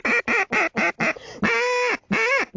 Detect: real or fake real